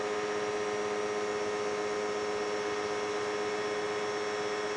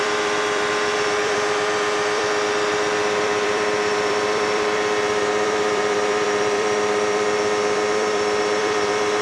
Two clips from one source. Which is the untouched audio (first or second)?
first